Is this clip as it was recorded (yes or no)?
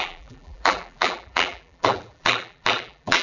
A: no